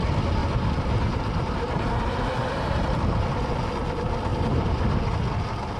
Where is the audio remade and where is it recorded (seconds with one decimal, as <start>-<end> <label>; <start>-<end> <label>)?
0.0-0.4 recorded; 0.4-2.8 remade; 2.8-4.3 recorded; 4.3-5.0 remade; 5.0-5.8 recorded